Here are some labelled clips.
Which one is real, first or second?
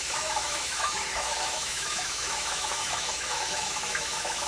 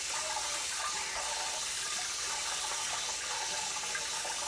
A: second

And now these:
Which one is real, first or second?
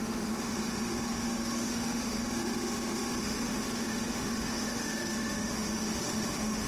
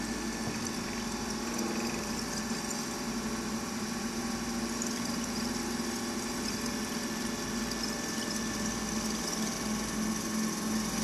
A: second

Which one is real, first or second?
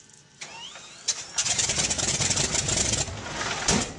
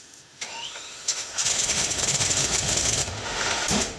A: first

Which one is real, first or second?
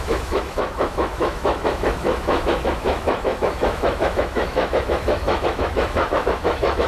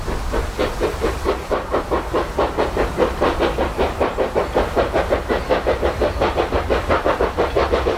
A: second